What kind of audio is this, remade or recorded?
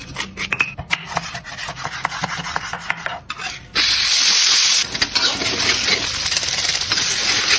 recorded